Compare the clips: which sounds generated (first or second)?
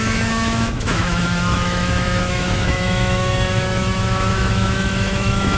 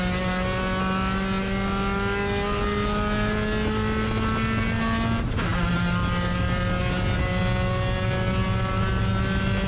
first